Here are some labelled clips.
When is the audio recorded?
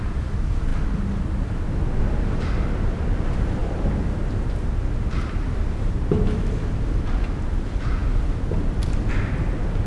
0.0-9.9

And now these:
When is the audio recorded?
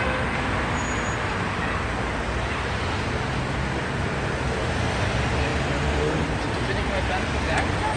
0.0-8.0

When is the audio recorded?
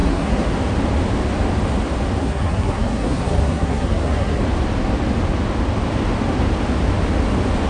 0.5-2.2; 4.4-7.7